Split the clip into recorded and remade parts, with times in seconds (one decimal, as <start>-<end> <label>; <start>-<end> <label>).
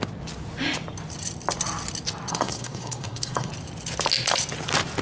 0.0-2.3 recorded; 2.3-3.5 remade; 3.5-5.0 recorded